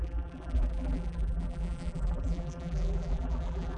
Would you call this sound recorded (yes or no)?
no